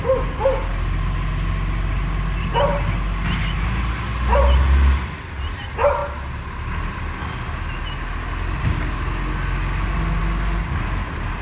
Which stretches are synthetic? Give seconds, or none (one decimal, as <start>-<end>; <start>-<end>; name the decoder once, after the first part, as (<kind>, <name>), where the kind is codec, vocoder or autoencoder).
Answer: none